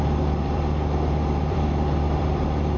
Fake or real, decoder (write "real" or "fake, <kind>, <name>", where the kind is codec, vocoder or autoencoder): fake, vocoder, BigVGAN v2